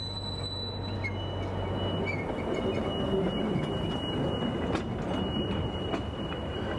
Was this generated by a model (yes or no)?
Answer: no